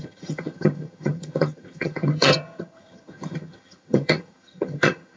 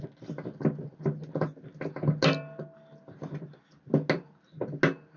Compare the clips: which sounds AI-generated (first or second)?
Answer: first